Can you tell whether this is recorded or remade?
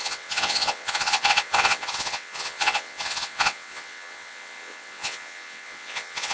remade